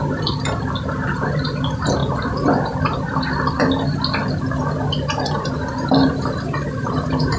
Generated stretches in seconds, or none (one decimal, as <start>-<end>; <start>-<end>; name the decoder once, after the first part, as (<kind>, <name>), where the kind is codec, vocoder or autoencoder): none